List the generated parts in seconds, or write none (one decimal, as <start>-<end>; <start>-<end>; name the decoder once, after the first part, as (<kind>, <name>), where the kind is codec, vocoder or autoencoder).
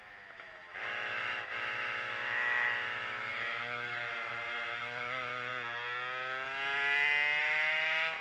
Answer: 0.0-5.5 (autoencoder, DAC-VAE); 7.4-8.2